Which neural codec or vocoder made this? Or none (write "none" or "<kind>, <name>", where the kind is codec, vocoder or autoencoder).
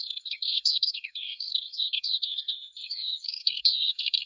codec, SNAC